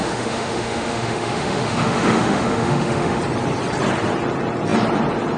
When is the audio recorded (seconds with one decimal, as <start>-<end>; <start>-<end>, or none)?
3.2-5.4